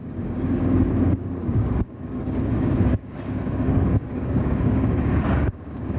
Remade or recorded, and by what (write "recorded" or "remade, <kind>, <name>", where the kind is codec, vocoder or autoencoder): remade, codec, DAC